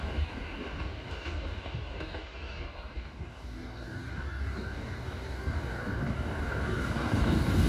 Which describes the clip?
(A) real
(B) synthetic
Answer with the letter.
B